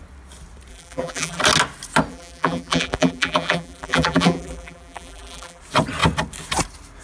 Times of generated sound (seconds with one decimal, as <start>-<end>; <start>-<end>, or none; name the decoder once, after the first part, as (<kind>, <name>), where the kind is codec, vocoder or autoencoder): 0.7-1.4 (vocoder, BigVGAN v2); 2.1-5.6